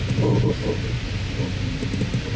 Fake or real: real